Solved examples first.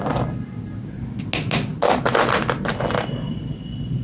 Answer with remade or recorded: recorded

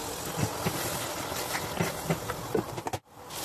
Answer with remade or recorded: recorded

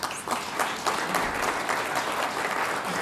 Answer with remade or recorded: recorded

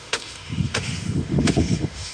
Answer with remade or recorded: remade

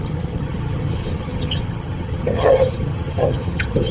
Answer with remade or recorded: remade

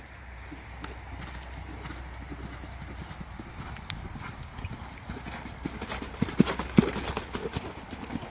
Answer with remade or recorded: recorded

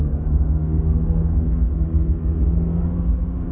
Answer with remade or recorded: remade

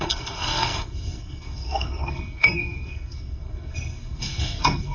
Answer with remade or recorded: remade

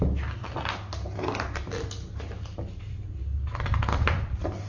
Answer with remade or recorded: recorded